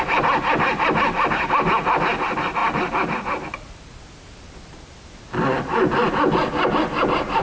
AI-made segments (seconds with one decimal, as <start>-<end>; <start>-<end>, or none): none